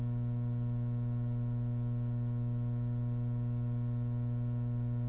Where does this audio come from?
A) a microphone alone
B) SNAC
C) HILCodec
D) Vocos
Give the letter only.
A